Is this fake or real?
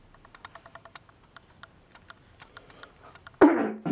real